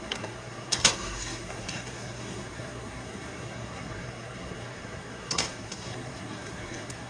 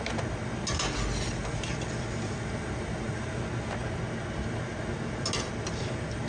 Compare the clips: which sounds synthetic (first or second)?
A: first